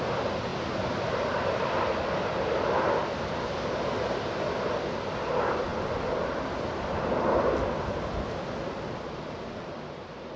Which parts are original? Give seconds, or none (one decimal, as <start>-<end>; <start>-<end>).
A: 0.0-10.4